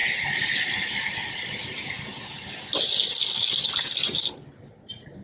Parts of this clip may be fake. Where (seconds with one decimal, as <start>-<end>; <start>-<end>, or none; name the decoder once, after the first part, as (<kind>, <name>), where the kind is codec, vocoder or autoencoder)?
none